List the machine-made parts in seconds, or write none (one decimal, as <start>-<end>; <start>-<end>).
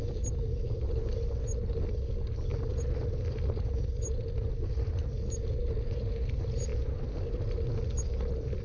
2.5-4.7; 5.6-6.3; 6.7-7.2